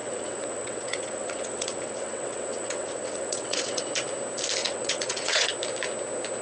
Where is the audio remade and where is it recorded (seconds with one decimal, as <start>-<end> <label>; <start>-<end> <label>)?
0.0-3.8 remade; 3.8-4.6 recorded; 4.6-5.5 remade; 5.5-6.4 recorded

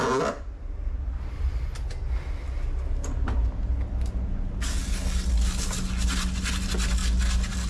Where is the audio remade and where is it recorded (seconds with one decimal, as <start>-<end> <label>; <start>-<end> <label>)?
0.0-7.7 recorded

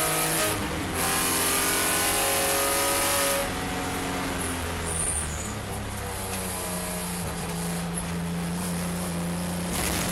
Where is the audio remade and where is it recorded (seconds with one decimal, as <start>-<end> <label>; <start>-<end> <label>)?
0.0-10.1 recorded

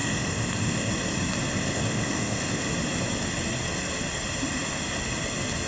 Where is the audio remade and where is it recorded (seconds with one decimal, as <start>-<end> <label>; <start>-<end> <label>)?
0.0-0.9 remade; 0.9-1.5 recorded; 1.5-2.6 remade; 2.6-5.7 recorded